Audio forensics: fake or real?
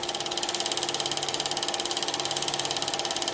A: real